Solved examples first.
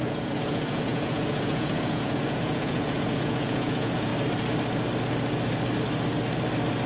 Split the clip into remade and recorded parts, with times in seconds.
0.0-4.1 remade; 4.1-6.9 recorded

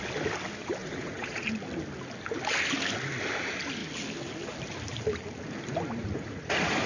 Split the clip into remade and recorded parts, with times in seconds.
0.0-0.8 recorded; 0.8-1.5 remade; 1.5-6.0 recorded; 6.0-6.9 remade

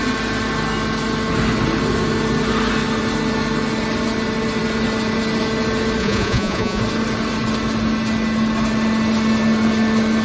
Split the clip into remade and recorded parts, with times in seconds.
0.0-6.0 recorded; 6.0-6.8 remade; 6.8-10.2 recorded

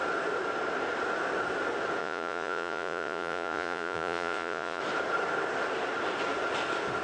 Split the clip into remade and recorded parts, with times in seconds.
0.0-2.0 recorded; 2.0-4.8 remade; 4.8-7.0 recorded